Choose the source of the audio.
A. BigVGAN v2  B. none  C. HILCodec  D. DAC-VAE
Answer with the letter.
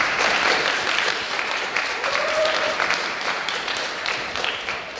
A